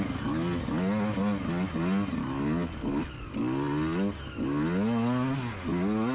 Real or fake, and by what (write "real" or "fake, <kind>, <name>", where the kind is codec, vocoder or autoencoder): real